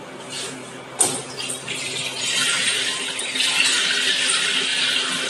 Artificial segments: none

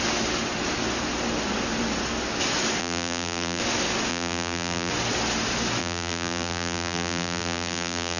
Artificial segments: 2.8-3.6; 4.1-4.9; 5.8-8.2

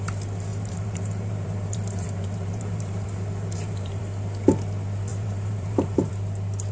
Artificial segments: 0.5-4.0; 5.1-6.1